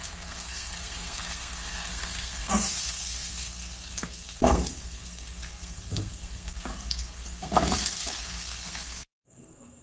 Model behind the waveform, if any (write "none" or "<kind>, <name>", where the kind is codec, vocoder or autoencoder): codec, SNAC